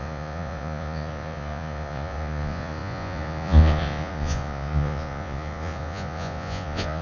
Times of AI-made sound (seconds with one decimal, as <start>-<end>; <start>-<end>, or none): 0.0-7.0